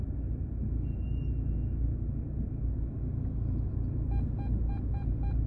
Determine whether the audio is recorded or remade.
recorded